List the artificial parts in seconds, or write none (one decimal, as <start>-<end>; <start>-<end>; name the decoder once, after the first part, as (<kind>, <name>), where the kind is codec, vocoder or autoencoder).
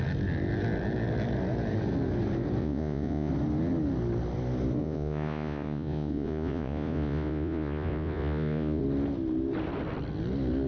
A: 2.6-3.3 (vocoder, Vocos); 4.8-8.8